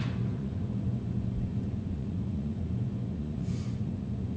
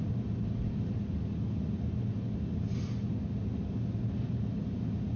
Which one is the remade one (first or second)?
first